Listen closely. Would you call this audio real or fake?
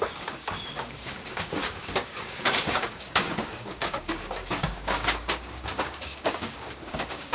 fake